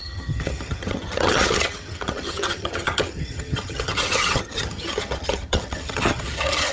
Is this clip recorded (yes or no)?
no